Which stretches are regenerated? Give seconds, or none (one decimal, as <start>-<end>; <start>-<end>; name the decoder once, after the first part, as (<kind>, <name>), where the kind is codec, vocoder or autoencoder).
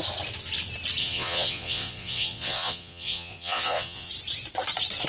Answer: 1.0-4.1 (vocoder, Vocos)